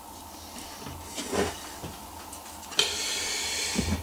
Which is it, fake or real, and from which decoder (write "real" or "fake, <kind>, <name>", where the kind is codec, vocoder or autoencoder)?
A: real